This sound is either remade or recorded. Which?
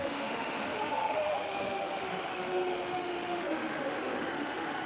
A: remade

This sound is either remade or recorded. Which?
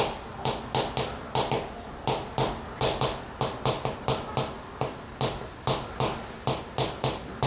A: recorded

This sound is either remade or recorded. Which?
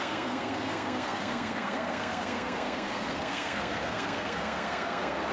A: remade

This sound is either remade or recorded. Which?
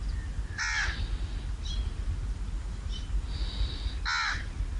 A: recorded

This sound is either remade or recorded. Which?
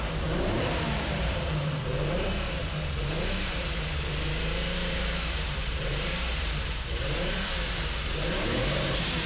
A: remade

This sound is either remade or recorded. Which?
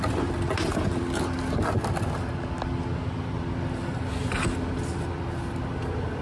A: recorded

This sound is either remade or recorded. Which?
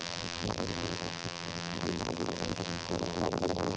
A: remade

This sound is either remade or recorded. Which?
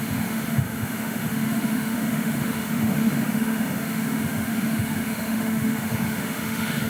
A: remade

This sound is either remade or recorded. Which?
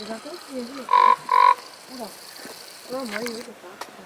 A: recorded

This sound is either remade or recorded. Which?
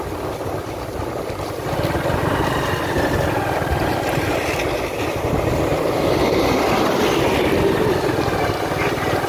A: recorded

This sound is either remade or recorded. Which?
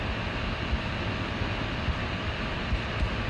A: recorded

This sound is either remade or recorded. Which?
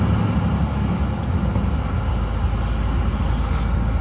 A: recorded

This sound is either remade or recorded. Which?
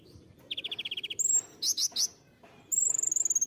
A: recorded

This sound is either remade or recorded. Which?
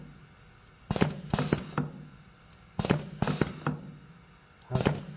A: recorded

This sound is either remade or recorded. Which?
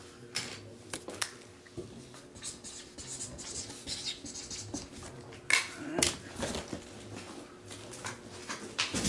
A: recorded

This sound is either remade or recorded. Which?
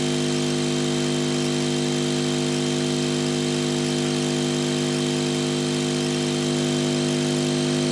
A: recorded